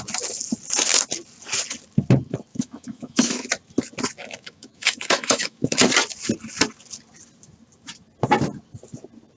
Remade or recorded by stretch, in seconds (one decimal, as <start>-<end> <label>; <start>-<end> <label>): 0.0-2.5 recorded; 2.5-3.5 remade; 3.5-4.2 recorded; 4.2-5.8 remade; 5.8-9.4 recorded